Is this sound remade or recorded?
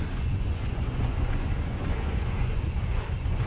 remade